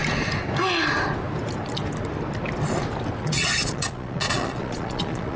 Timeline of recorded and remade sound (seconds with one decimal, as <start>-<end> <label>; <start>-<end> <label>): 0.0-3.2 recorded; 3.2-5.4 remade